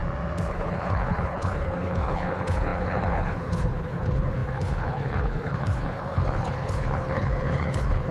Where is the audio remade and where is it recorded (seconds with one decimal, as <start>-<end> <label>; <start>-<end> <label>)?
0.0-0.5 recorded; 0.5-8.1 remade